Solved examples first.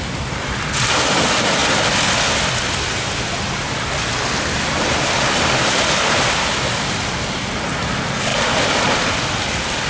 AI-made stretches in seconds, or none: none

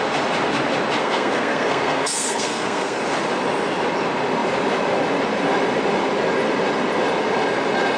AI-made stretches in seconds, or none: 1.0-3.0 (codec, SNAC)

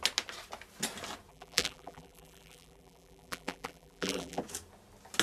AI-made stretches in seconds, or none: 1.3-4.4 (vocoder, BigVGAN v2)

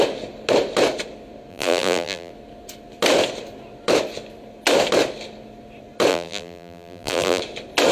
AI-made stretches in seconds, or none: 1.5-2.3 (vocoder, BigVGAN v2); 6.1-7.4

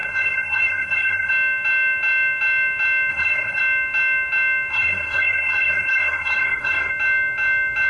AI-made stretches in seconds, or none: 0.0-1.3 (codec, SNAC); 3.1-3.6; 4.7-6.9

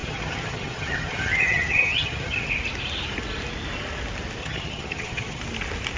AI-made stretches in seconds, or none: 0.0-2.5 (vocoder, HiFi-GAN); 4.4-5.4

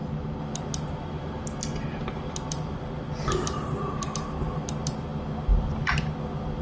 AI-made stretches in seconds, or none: none